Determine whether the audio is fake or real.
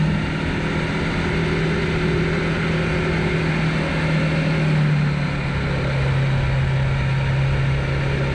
real